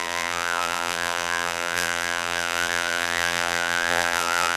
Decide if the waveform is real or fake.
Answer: fake